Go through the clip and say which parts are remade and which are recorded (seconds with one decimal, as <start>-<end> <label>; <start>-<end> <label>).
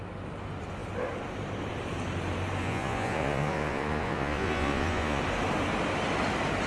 0.0-2.6 recorded; 2.6-5.2 remade; 5.2-6.7 recorded